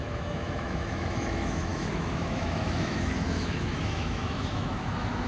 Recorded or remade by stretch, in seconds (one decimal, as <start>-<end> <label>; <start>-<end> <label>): 0.0-5.3 remade